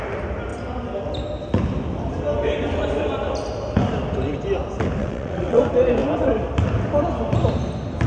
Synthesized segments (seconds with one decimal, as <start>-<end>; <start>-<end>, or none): 5.0-5.6